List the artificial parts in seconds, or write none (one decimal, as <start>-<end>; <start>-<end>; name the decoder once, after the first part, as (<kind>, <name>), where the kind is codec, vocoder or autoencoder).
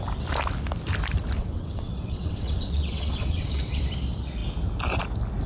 1.4-3.8 (vocoder, WaveNeXt)